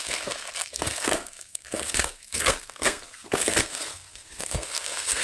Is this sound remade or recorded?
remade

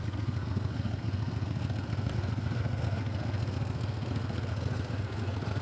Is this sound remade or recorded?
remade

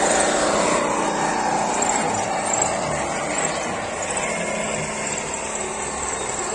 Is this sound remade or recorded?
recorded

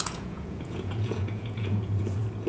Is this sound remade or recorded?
remade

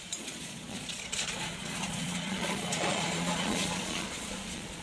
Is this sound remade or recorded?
remade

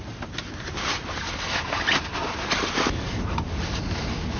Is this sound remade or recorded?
recorded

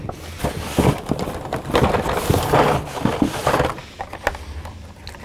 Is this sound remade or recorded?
remade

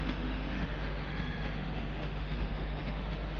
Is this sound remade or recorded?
remade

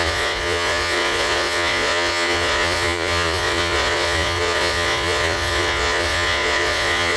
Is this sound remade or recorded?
remade